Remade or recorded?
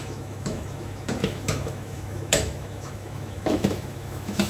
remade